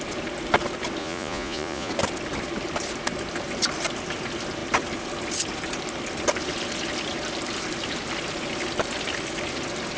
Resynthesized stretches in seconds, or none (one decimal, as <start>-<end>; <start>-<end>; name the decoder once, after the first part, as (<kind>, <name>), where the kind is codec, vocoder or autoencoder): 1.0-1.9 (vocoder, Vocos)